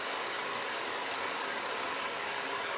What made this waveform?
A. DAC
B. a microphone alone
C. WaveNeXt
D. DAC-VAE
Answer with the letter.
A